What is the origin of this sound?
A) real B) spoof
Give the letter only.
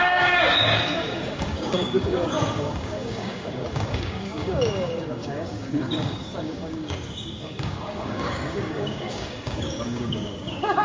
B